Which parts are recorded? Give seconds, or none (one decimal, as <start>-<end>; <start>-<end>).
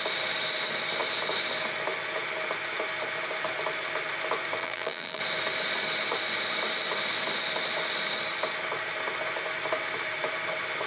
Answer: 0.0-4.6; 5.2-10.9